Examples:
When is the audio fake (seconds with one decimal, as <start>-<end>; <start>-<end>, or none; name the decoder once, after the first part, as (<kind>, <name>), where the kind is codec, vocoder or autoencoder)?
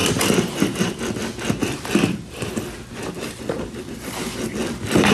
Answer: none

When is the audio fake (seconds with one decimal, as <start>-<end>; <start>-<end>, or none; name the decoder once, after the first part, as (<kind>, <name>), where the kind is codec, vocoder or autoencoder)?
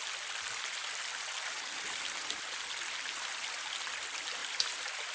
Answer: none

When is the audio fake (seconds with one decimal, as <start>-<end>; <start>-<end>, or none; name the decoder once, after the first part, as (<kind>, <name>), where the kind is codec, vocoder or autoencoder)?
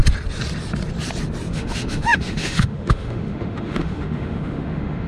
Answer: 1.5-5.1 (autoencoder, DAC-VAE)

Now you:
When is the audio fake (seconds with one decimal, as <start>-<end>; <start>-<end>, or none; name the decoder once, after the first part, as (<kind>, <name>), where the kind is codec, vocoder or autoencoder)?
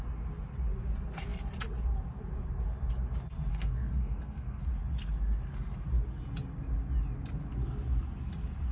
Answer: 3.5-4.6 (codec, SNAC)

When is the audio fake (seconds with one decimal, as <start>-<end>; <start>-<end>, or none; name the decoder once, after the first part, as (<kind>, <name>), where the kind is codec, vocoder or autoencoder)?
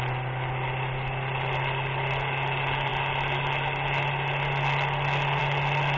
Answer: none